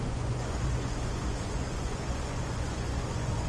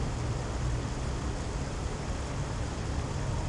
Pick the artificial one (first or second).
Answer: first